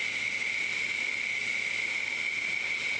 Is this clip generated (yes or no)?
no